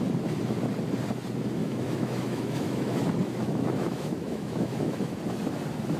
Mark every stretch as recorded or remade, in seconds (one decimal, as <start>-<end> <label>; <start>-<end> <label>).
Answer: 0.0-1.6 recorded; 1.6-5.2 remade; 5.2-6.0 recorded